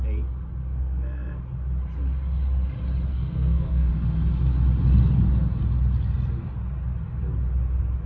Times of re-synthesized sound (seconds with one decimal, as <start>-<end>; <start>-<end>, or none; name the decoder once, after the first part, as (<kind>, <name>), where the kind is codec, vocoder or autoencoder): 0.6-1.4 (codec, SNAC); 3.1-3.9